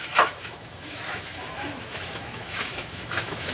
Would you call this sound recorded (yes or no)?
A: no